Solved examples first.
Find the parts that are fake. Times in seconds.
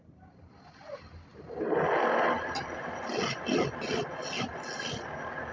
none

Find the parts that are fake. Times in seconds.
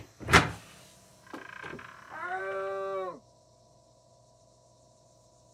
none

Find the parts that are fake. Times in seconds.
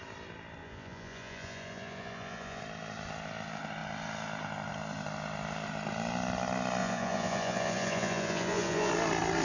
0.6-2.6 (vocoder, Vocos); 6.8-8.9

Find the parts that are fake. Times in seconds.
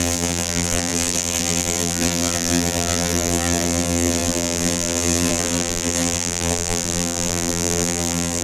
0.0-8.4 (vocoder, BigVGAN v2)